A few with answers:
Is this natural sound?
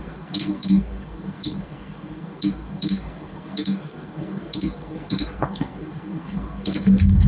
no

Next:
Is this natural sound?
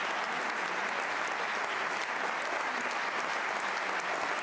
yes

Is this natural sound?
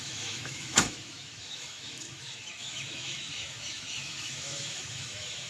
no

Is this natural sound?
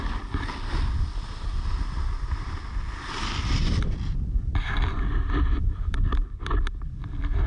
no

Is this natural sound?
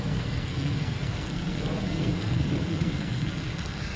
no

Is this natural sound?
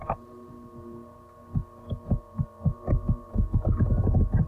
yes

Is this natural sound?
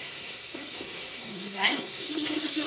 no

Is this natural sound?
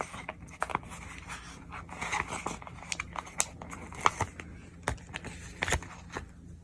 yes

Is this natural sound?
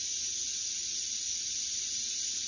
yes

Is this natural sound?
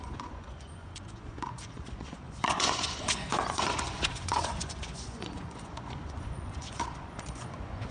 no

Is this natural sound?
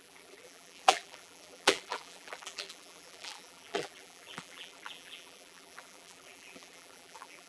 no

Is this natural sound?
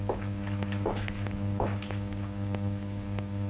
no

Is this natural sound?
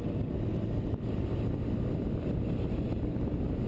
yes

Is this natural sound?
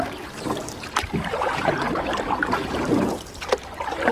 no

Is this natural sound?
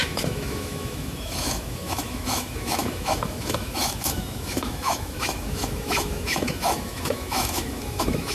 no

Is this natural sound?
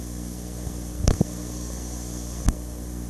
no